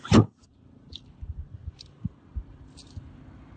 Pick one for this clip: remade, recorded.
recorded